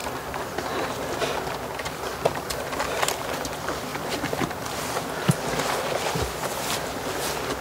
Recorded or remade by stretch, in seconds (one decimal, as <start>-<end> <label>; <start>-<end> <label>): 0.0-7.6 recorded